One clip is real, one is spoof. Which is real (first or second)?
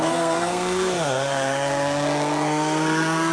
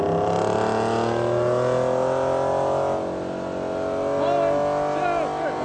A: second